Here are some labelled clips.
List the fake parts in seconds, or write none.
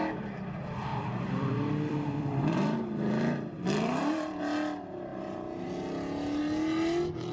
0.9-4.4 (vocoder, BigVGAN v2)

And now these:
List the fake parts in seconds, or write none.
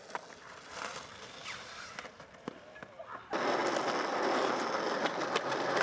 1.4-2.8 (vocoder, BigVGAN v2)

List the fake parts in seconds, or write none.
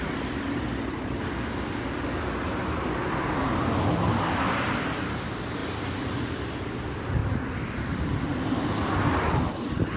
5.6-6.4 (vocoder, BigVGAN v2); 7.2-8.0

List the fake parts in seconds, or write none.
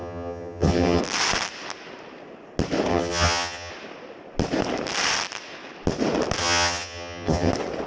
0.0-1.0 (vocoder, HiFi-GAN); 2.9-3.7; 6.4-7.5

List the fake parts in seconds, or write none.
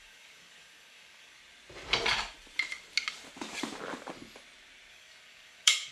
0.0-1.4 (codec, DAC); 4.9-5.9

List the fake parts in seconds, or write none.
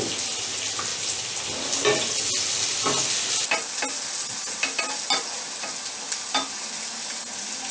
none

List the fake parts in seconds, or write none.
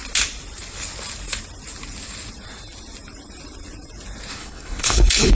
4.4-5.3 (codec, HILCodec)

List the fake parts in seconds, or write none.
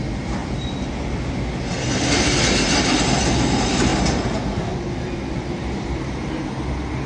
none